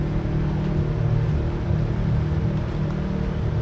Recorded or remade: recorded